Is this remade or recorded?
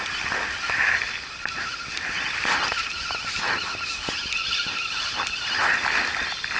recorded